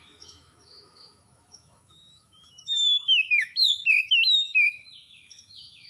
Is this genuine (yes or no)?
no